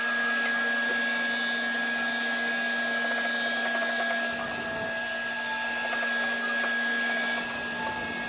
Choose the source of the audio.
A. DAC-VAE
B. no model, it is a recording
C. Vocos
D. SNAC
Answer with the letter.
B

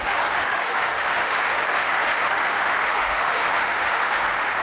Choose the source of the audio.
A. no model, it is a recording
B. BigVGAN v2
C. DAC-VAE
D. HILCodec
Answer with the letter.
C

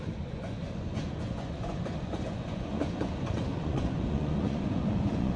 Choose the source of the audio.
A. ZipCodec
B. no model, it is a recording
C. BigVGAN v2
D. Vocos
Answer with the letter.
D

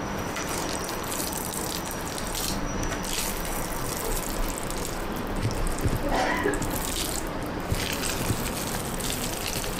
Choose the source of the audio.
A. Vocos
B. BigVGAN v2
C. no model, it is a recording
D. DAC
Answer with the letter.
C